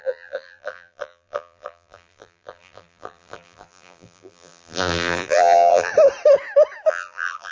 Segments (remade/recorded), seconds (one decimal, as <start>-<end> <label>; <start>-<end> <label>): 0.0-5.9 remade; 5.9-6.9 recorded; 6.9-7.5 remade